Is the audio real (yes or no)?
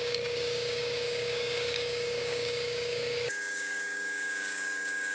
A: no